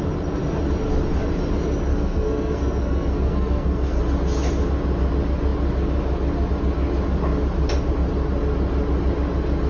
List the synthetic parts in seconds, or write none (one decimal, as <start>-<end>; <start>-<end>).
1.9-4.0